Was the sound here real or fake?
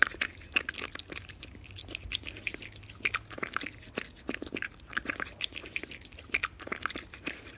real